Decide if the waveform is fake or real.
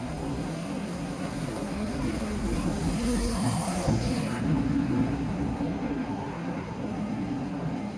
fake